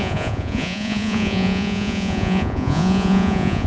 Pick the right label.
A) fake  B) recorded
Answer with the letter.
A